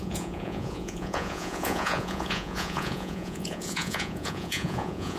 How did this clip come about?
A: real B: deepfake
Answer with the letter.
B